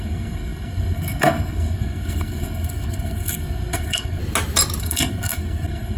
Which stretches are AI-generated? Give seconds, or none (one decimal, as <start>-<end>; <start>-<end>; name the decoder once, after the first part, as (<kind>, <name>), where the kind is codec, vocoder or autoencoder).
0.0-4.2 (codec, SNAC); 4.8-6.0